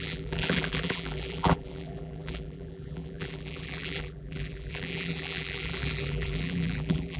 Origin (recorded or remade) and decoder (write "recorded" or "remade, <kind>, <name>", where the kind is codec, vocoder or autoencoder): remade, vocoder, BigVGAN v2